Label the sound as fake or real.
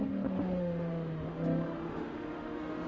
fake